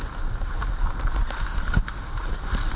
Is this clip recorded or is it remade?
recorded